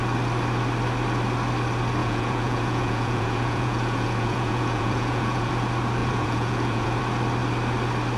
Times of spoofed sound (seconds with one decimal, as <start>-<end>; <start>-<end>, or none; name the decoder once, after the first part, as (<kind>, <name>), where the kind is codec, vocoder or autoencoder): 2.0-5.5 (vocoder, Vocos); 6.0-7.0